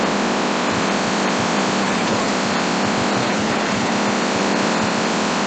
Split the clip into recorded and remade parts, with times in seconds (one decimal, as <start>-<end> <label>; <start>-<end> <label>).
0.0-1.8 recorded; 1.8-2.3 remade; 2.3-3.2 recorded; 3.2-3.9 remade; 3.9-5.5 recorded